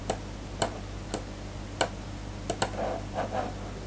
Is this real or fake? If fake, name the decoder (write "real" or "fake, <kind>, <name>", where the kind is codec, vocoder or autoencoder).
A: real